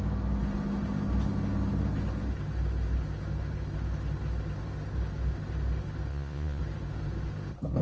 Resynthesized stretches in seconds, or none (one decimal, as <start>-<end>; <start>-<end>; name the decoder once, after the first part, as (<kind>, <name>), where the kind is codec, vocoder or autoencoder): 6.1-6.6 (vocoder, Vocos)